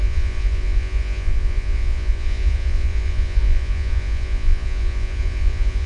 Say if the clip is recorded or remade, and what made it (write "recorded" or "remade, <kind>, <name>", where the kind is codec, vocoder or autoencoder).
remade, vocoder, Vocos